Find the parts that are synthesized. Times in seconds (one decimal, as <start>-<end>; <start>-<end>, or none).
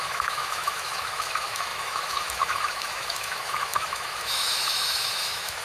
0.0-5.6